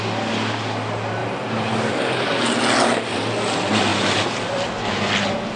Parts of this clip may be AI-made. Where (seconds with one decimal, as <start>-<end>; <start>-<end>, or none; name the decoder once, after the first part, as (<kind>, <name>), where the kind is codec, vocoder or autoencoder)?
1.2-1.7 (vocoder, BigVGAN v2); 3.9-4.7